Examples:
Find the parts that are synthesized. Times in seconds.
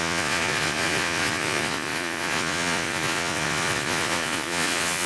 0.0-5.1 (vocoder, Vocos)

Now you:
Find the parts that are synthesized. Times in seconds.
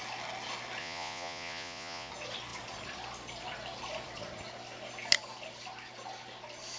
0.8-2.1 (vocoder, Vocos)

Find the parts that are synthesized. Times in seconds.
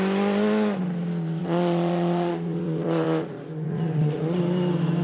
1.4-4.4 (vocoder, Vocos)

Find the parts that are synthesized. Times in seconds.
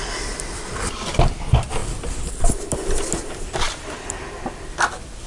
none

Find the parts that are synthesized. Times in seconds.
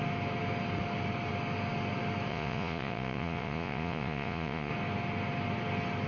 2.3-4.7 (vocoder, Vocos)